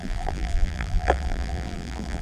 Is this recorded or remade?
remade